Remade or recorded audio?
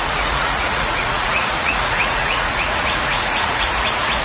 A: remade